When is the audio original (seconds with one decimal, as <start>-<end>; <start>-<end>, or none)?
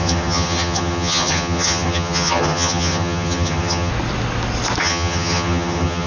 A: 3.9-4.8